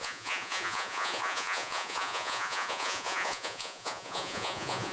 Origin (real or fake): fake